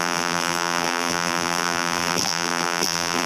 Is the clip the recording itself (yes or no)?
no